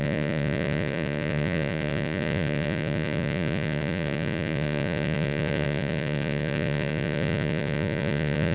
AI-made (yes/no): yes